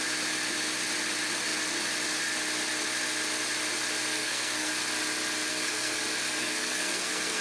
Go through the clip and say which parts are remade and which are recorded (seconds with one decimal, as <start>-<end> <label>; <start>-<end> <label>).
0.0-4.1 recorded; 4.1-4.7 remade; 4.7-5.5 recorded; 5.5-6.0 remade; 6.0-6.4 recorded; 6.4-7.4 remade